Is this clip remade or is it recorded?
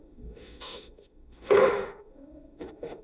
remade